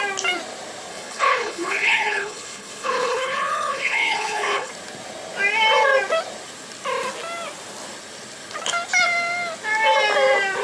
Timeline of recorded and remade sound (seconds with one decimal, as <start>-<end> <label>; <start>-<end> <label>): 0.0-0.9 recorded; 0.9-4.7 remade; 4.7-10.6 recorded